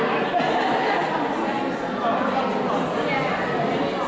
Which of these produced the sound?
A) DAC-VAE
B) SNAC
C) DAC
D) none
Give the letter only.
D